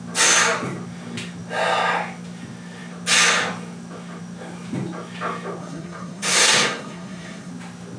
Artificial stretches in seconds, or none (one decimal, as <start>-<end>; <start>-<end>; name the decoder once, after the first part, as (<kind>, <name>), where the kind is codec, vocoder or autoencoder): 5.6-7.5 (codec, SNAC)